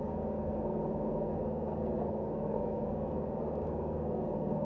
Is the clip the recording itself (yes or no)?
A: no